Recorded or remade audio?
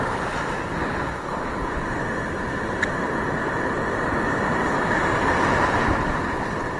recorded